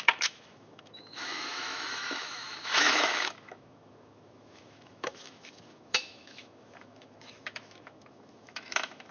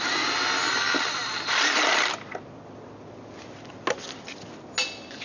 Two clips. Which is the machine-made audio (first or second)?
first